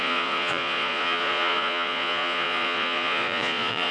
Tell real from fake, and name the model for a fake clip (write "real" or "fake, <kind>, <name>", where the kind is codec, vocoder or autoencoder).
fake, vocoder, Vocos